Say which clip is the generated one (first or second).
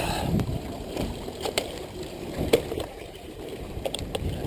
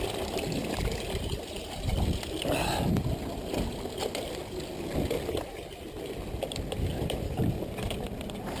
first